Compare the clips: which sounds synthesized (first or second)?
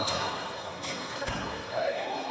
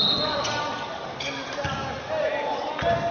first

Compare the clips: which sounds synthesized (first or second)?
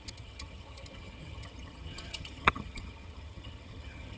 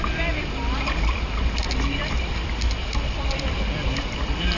first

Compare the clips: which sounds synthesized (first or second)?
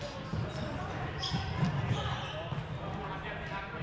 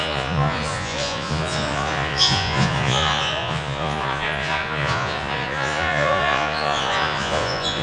second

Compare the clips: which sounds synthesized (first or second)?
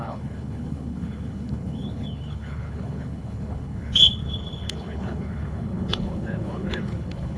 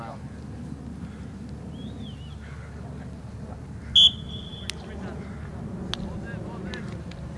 first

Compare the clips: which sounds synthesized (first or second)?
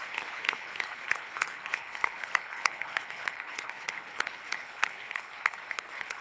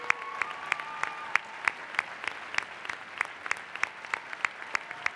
first